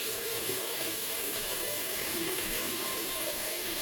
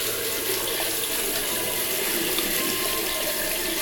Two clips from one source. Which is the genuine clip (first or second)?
second